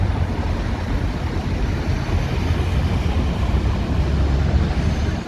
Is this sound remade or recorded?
recorded